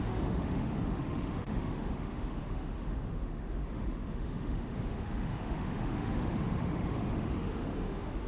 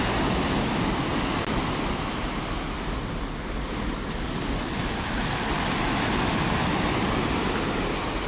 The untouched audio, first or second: second